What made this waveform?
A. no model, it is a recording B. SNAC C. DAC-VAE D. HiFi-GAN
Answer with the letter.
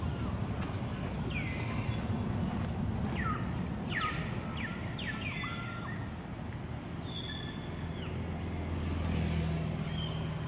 A